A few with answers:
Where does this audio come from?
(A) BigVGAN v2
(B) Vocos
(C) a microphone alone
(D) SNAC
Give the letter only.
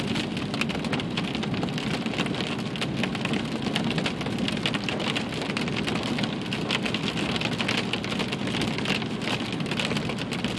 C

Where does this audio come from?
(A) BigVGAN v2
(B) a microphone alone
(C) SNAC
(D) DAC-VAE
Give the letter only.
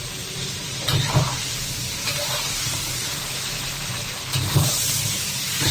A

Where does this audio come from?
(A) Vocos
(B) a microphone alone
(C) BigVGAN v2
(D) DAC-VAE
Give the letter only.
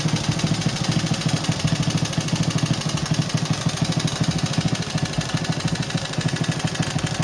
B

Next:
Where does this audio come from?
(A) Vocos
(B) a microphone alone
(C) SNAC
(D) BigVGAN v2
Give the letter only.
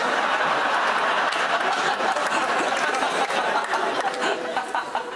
B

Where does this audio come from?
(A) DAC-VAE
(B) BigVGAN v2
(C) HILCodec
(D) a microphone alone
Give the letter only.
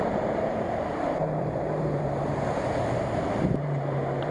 B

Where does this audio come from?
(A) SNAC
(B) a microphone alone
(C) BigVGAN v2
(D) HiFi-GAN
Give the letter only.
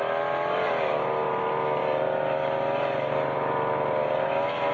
B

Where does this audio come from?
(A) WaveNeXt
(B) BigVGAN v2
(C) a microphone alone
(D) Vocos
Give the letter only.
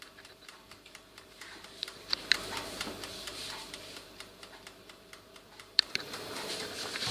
B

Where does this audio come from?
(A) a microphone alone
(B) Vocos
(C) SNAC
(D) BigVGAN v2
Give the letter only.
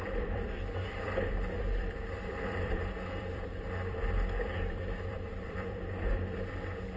D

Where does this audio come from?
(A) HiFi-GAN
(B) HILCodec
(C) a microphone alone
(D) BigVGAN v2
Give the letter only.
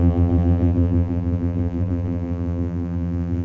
D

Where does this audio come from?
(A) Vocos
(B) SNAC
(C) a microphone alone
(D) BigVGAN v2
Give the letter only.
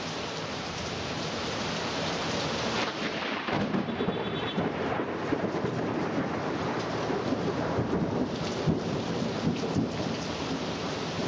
D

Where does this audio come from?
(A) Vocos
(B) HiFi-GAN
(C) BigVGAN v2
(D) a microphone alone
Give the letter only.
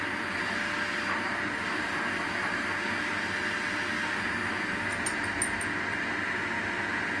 D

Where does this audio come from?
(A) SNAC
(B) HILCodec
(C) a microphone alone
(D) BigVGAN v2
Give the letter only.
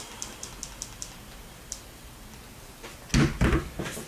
C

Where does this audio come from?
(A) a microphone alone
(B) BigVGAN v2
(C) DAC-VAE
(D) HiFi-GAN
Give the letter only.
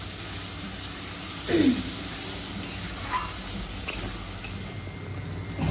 A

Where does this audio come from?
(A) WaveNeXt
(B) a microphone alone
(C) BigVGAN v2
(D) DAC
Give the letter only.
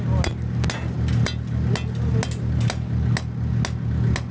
B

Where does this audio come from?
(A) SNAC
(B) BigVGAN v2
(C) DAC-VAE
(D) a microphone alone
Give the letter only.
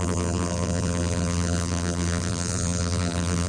B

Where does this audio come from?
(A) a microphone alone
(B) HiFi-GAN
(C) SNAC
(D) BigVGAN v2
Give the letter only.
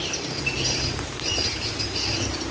D